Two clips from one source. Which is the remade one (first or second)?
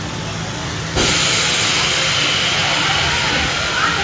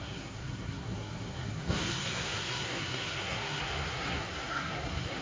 second